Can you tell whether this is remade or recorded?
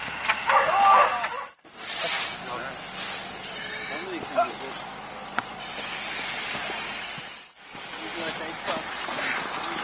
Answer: recorded